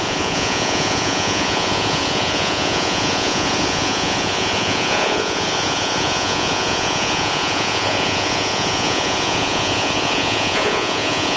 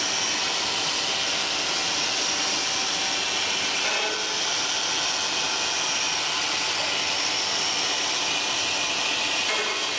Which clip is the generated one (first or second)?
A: first